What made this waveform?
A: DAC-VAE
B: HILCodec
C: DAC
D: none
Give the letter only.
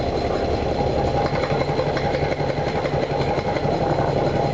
D